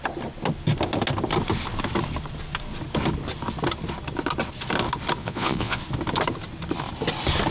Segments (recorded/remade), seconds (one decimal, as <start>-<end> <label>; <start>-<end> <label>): 0.0-5.2 recorded; 5.2-5.8 remade; 5.8-7.5 recorded